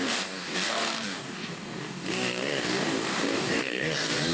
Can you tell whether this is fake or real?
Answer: fake